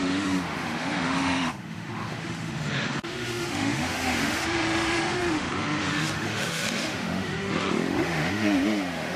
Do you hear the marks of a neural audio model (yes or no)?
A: yes